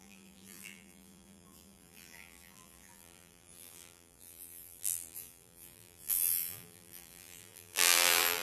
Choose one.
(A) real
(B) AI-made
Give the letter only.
B